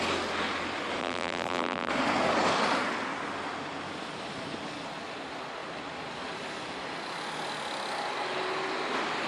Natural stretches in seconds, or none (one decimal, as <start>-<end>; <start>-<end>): 0.0-1.0; 1.9-9.3